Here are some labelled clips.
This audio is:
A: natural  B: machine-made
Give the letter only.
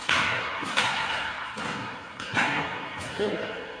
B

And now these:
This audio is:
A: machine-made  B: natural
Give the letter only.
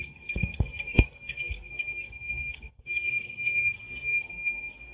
A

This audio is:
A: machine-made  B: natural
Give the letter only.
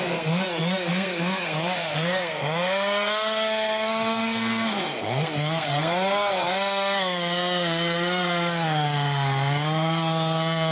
A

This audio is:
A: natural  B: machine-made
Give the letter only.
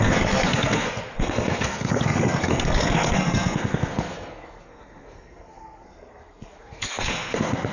B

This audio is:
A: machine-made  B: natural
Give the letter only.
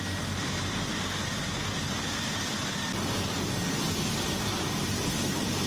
B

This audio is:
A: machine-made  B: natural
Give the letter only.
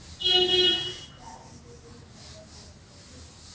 B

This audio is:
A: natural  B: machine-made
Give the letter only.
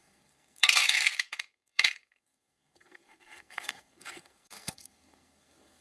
B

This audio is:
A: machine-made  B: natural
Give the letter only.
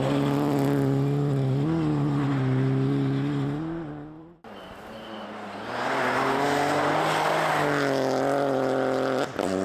B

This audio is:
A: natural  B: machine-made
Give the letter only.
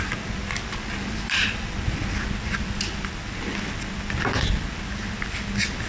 A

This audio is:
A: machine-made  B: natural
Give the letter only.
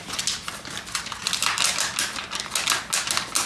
B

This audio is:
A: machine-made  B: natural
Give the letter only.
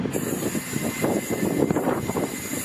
B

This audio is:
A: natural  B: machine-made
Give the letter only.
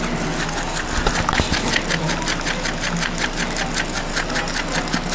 A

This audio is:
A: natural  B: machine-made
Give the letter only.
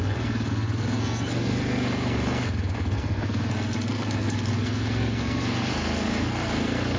B